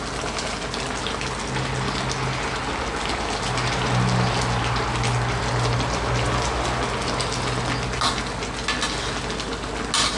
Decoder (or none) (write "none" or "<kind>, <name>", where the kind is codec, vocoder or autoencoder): none